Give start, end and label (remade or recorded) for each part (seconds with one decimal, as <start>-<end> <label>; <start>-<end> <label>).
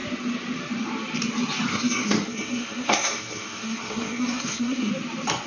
0.0-1.7 recorded; 1.7-4.9 remade; 4.9-5.5 recorded